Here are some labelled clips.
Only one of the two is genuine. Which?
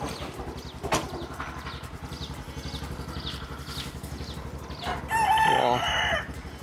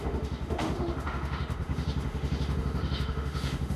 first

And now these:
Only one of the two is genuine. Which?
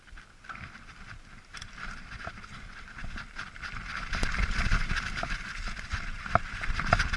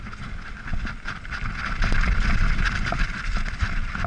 second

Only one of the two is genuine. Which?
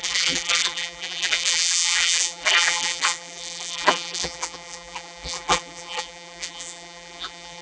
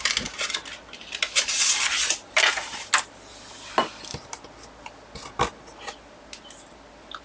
second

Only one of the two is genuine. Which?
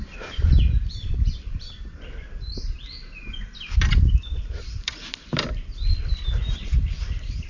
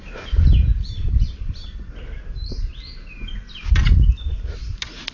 second